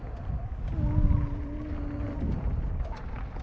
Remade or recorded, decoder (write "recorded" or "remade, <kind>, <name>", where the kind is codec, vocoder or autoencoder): recorded